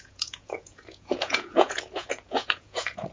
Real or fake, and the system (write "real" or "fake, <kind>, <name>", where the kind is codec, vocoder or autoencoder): fake, vocoder, Vocos